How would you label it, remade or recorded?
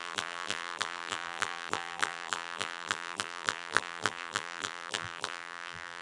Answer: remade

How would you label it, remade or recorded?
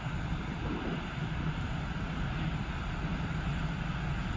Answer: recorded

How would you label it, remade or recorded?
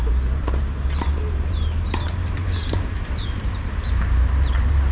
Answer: remade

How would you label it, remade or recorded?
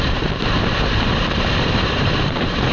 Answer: remade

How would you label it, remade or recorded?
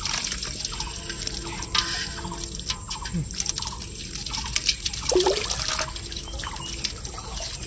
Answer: recorded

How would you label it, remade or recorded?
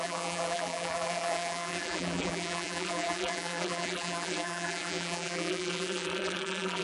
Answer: remade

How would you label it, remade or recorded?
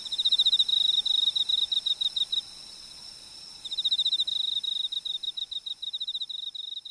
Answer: remade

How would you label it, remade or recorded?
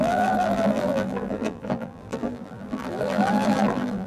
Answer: remade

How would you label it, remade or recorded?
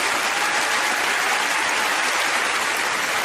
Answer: recorded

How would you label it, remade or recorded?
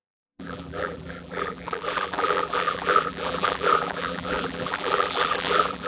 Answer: remade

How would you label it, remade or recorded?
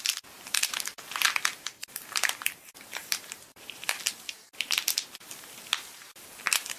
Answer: remade